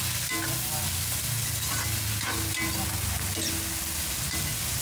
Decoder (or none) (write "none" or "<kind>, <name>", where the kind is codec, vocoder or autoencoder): none